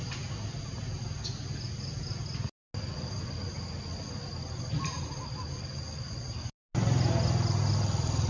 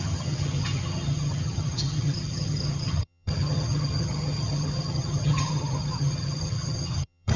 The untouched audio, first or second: first